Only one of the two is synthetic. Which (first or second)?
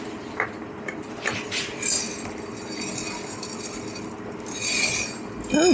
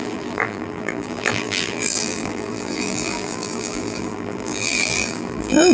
second